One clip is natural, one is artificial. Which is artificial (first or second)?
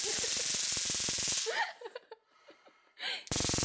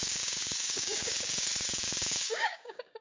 second